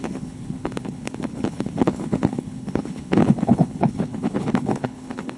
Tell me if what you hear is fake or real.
fake